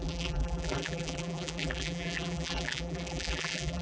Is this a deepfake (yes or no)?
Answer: yes